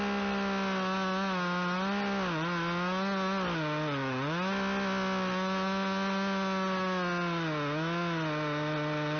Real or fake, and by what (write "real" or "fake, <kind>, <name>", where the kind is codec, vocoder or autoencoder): real